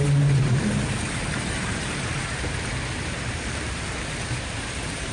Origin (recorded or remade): recorded